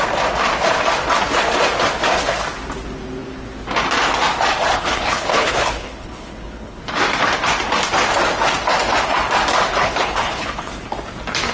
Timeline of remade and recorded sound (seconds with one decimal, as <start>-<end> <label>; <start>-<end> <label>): 0.0-4.7 recorded; 4.7-6.8 remade; 6.8-9.7 recorded; 9.7-10.8 remade; 10.8-11.5 recorded